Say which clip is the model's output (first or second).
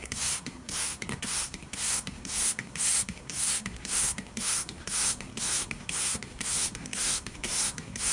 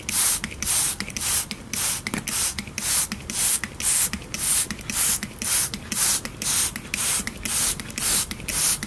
first